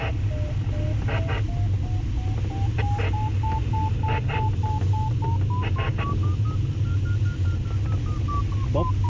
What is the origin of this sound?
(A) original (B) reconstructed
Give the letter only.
A